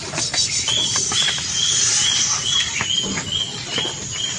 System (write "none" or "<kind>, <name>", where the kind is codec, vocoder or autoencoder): vocoder, BigVGAN v2